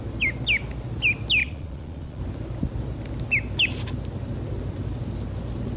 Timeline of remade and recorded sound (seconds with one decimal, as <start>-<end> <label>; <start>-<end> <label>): 0.0-1.4 recorded; 1.4-2.2 remade; 2.2-5.8 recorded